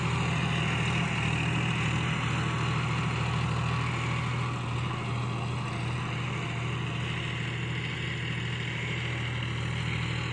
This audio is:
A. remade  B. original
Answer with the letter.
B